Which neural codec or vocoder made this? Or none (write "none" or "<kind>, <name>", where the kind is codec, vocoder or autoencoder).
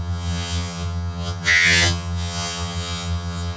vocoder, HiFi-GAN